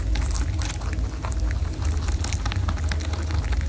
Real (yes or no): yes